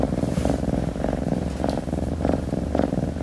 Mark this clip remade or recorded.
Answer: remade